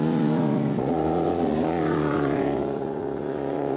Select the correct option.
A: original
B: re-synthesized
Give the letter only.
B